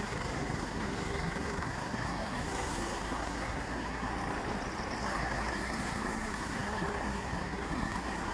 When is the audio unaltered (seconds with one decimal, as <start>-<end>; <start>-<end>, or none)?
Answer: 4.1-5.0